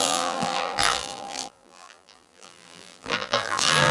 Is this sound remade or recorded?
remade